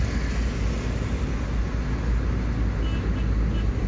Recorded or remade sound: recorded